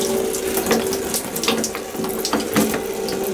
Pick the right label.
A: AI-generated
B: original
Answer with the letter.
B